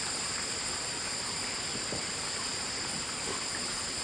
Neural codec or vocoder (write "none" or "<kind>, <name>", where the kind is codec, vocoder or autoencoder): none